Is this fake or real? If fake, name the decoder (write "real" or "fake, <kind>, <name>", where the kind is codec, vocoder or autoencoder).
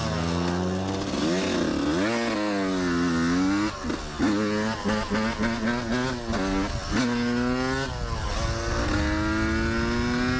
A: real